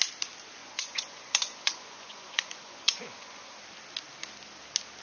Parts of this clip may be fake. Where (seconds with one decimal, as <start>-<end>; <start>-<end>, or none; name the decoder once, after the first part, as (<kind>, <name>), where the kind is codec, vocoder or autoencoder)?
0.6-3.6 (vocoder, Vocos)